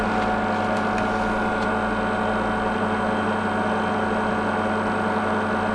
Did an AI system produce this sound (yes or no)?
no